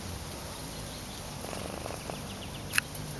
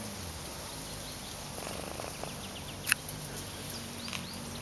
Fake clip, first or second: first